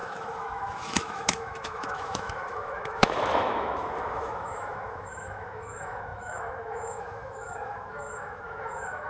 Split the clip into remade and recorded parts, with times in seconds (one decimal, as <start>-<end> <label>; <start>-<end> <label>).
0.0-9.1 remade